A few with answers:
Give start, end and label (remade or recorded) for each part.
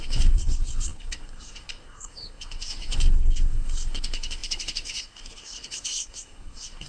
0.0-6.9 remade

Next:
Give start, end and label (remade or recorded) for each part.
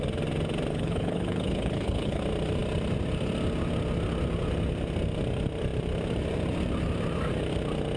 0.0-0.7 recorded; 0.7-2.2 remade; 2.2-8.0 recorded